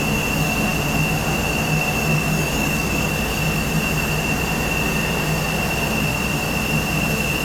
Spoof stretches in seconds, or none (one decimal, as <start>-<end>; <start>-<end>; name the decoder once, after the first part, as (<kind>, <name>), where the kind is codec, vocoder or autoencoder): 2.1-3.4 (codec, DAC)